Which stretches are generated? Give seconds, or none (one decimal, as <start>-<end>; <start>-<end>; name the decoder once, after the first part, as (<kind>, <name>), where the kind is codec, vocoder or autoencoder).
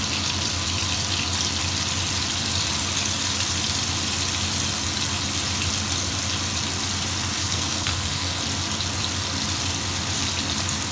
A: 7.4-8.4 (codec, SNAC)